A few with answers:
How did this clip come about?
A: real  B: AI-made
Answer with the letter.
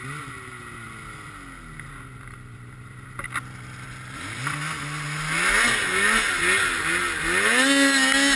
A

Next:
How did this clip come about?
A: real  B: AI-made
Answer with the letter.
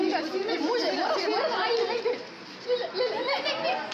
A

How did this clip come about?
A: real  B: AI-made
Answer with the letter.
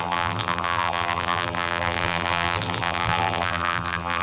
B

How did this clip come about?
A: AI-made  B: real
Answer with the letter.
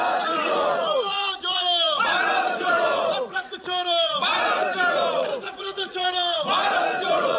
A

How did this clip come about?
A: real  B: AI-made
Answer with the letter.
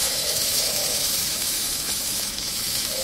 B